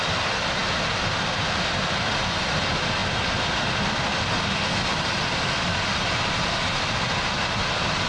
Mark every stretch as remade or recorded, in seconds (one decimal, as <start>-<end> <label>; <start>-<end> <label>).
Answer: 0.0-8.1 recorded